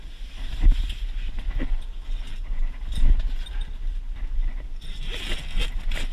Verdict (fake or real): real